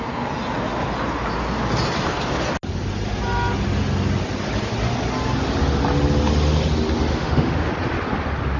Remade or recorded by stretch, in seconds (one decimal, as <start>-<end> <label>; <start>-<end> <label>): 0.0-7.1 recorded; 7.1-7.7 remade; 7.7-8.6 recorded